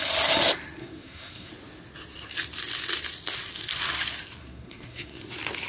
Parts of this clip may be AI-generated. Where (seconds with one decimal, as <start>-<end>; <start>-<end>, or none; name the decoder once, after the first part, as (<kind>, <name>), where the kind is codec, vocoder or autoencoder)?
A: 0.8-1.5 (codec, SNAC); 4.4-5.2